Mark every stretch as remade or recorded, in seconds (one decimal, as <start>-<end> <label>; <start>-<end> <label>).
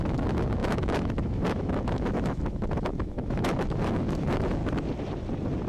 0.0-4.6 remade; 4.6-5.7 recorded